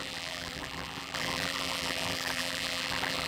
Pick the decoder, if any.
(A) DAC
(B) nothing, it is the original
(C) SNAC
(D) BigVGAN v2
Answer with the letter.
D